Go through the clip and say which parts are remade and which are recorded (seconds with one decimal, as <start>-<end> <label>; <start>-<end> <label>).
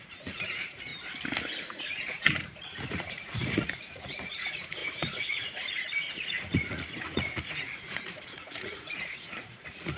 0.0-0.9 remade; 0.9-1.6 recorded; 1.6-10.0 remade